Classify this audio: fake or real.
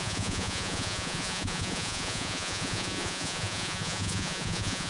fake